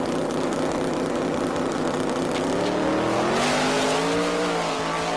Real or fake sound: real